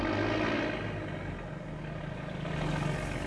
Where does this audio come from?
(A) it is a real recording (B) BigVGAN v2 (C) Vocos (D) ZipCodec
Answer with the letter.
A